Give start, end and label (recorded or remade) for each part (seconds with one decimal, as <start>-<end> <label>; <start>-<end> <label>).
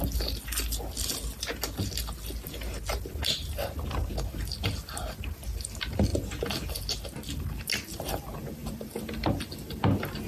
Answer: 0.0-10.3 recorded